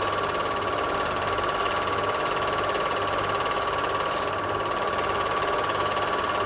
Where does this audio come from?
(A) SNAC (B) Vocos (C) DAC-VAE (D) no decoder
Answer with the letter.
D